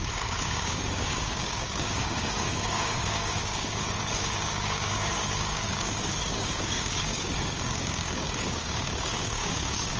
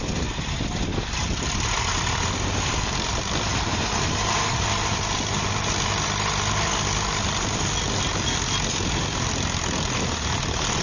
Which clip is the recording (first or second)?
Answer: second